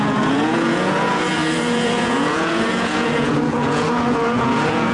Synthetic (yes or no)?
yes